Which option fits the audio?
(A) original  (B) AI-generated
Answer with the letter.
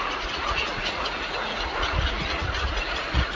B